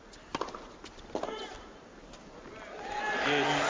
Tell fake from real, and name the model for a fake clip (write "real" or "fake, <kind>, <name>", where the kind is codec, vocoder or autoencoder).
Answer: real